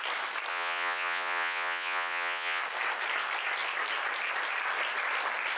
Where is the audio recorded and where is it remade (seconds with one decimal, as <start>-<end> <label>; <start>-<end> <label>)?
0.0-0.5 recorded; 0.5-2.6 remade; 2.6-5.6 recorded